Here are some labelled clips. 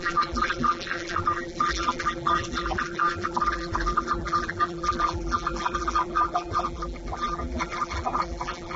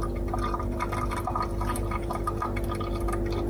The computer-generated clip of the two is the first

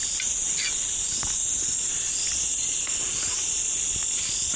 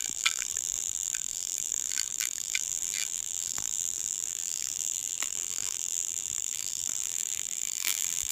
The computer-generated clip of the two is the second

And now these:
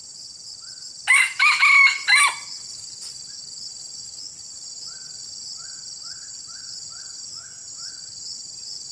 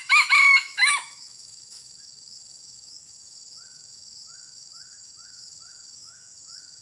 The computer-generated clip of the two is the second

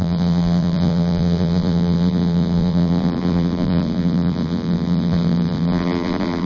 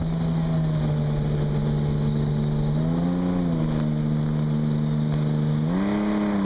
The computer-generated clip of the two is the first